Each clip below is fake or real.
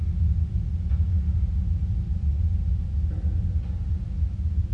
real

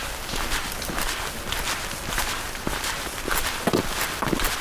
real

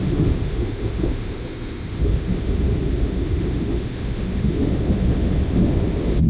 fake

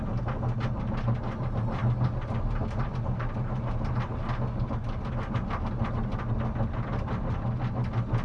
real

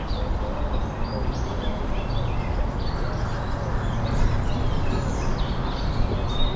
real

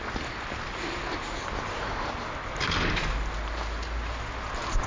real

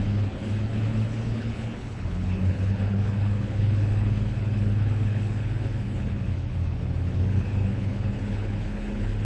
fake